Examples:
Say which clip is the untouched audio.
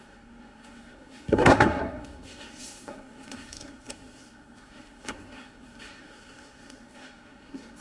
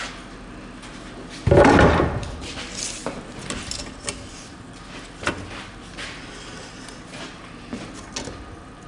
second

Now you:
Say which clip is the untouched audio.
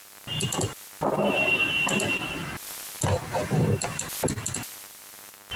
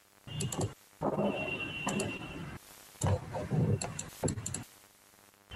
first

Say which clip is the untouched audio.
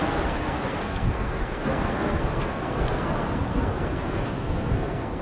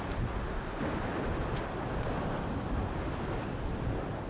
second